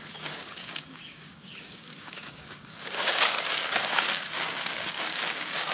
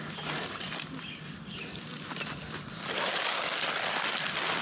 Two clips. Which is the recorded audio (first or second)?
second